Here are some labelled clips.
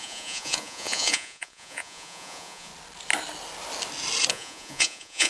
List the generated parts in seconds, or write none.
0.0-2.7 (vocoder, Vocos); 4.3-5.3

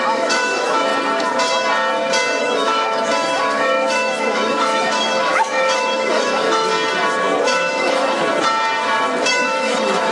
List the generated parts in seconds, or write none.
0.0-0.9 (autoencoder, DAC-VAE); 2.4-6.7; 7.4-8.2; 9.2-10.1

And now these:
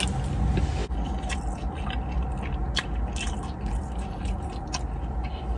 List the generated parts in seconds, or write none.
none

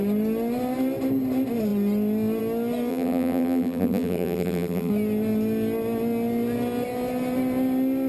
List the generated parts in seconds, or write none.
2.9-4.9 (vocoder, BigVGAN v2)